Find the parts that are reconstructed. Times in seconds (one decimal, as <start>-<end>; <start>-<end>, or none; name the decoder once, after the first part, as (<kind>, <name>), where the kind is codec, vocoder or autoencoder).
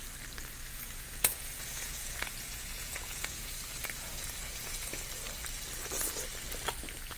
0.7-5.0 (vocoder, Vocos)